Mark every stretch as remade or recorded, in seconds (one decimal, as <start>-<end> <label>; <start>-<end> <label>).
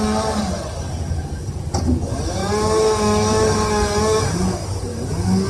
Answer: 0.0-2.4 recorded; 2.4-4.2 remade; 4.2-4.9 recorded; 4.9-5.5 remade